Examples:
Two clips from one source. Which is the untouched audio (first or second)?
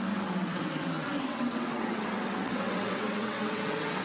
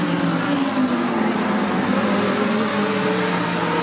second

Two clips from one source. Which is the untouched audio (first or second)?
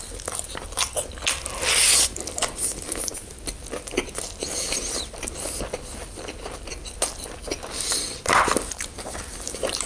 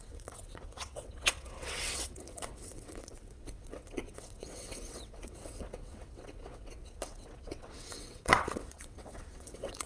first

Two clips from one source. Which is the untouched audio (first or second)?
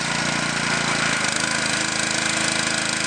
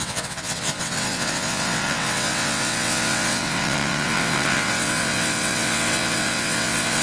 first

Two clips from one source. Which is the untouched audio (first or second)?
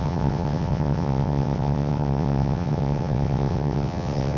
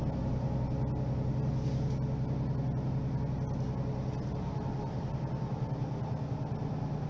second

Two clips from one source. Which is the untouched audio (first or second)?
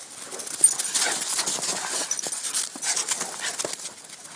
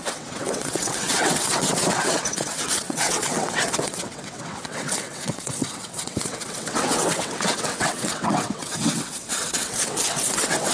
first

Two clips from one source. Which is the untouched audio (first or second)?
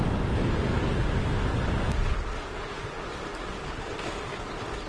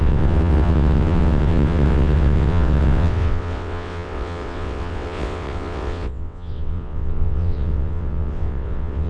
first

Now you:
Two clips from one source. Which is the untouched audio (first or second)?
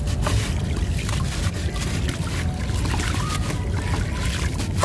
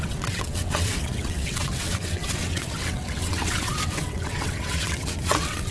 first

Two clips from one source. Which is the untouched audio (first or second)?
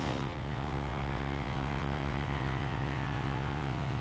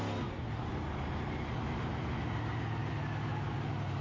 second